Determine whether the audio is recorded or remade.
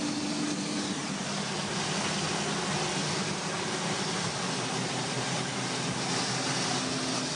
recorded